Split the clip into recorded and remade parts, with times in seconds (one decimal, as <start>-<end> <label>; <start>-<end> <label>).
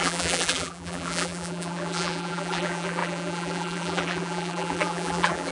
0.0-5.5 remade